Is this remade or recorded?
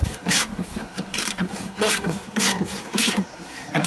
remade